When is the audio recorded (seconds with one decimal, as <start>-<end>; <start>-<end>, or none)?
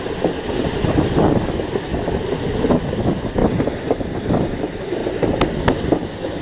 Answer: 0.0-3.4; 4.2-5.0; 5.6-6.4